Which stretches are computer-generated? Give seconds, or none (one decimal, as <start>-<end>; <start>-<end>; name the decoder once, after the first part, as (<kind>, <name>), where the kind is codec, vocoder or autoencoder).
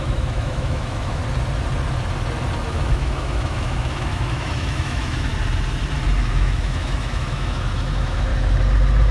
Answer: 0.0-1.2 (autoencoder, DAC-VAE); 2.7-5.3; 6.2-8.3